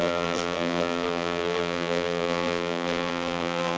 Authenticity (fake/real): fake